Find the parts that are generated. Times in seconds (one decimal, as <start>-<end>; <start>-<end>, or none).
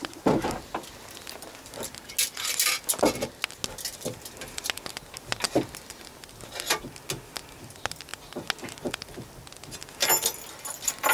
none